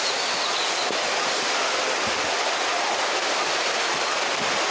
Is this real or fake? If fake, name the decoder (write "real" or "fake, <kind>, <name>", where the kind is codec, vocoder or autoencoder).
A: real